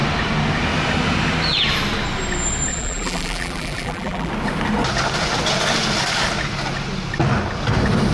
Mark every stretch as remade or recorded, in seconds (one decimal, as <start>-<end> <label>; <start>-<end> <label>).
0.0-2.7 recorded; 2.7-4.3 remade; 4.3-8.1 recorded